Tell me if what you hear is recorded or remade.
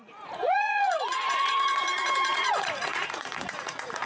remade